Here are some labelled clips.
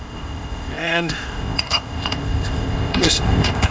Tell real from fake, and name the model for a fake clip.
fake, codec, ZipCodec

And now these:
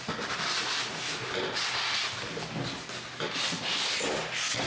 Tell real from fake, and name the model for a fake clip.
real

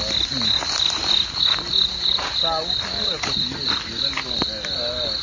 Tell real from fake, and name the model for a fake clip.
real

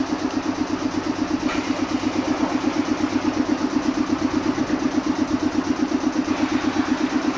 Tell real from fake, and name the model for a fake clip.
real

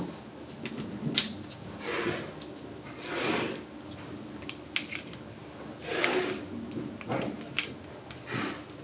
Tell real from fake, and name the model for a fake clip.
real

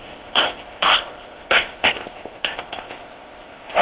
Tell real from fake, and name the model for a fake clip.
fake, codec, ZipCodec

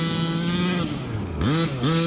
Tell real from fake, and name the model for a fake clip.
real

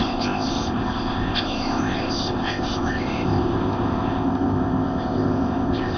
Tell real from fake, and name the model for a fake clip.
fake, codec, ZipCodec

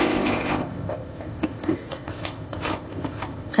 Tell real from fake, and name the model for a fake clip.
fake, codec, ZipCodec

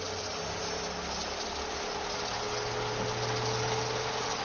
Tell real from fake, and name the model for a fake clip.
real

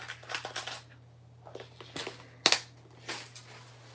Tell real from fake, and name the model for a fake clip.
real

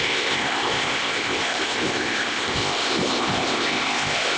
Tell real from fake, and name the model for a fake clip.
fake, codec, ZipCodec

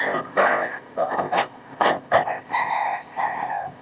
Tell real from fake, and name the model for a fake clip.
fake, codec, ZipCodec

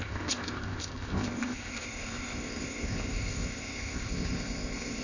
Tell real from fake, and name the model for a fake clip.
fake, codec, ZipCodec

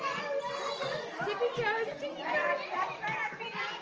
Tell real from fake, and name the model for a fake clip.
real